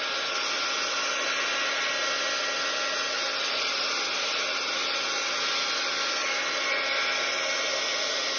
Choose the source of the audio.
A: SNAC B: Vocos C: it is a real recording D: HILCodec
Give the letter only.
C